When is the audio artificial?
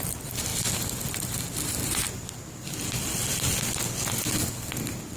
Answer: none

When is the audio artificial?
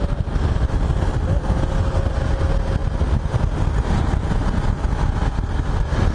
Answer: 1.1-2.4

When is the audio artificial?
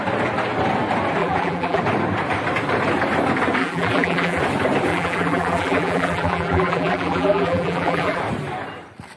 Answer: 1.2-1.8; 3.6-4.4; 4.9-8.2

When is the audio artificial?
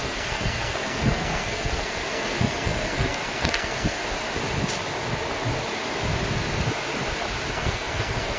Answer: 0.0-4.0; 7.5-8.4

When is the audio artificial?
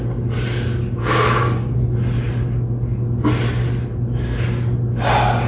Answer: 1.0-1.8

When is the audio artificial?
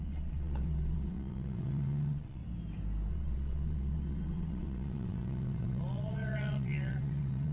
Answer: 0.0-2.4; 3.1-7.5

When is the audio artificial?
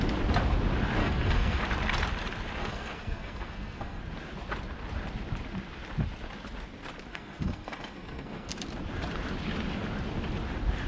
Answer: 1.0-1.6; 2.6-4.0; 7.1-8.5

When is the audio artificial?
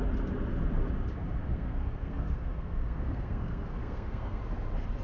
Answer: 1.4-4.4